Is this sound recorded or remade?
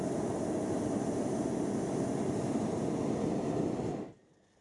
recorded